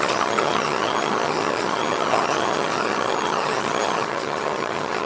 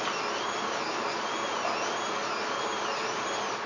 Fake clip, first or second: first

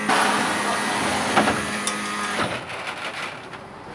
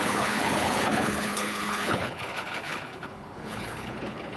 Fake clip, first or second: second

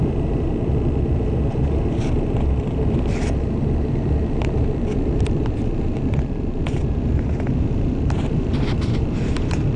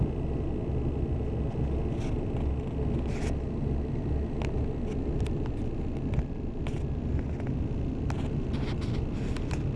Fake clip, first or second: first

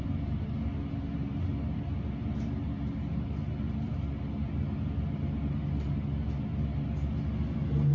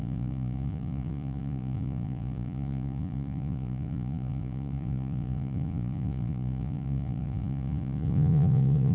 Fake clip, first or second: second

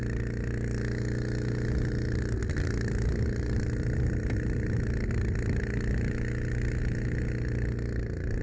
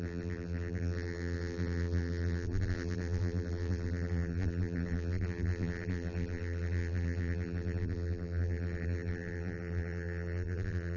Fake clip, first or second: second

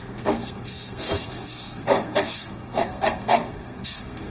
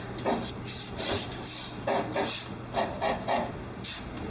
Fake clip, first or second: first